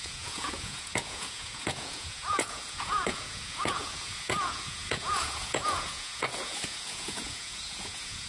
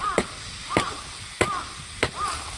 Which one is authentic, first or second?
second